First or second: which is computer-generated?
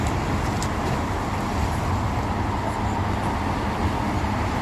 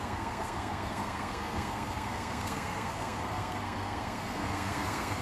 second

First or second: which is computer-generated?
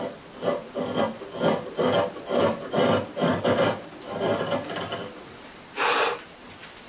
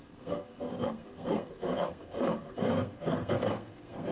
second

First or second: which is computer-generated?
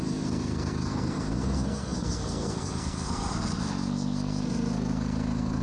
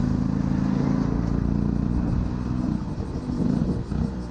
first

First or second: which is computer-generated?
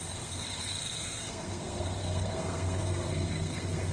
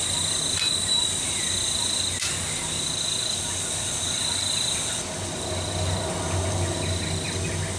first